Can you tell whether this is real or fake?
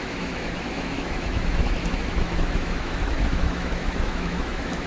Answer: fake